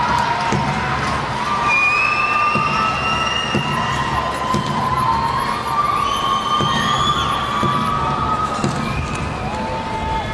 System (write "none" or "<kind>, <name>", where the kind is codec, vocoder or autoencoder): none